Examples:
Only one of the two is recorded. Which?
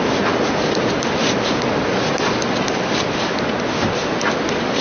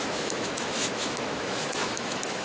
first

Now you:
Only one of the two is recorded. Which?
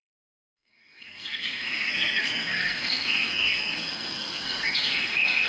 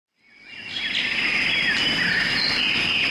second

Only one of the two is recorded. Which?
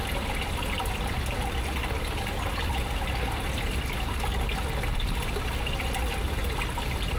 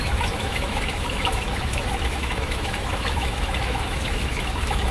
first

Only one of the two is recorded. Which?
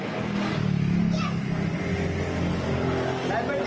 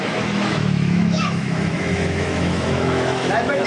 first